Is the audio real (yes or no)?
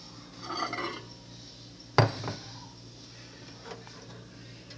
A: yes